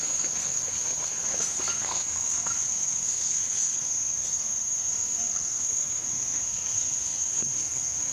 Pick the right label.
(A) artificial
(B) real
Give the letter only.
A